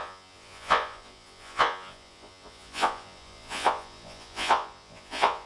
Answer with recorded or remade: remade